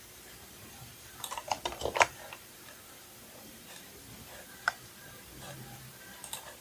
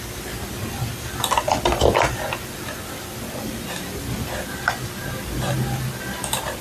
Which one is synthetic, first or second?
first